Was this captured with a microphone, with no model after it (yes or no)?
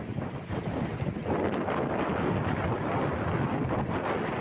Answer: yes